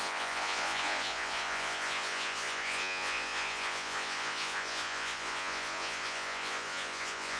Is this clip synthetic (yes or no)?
yes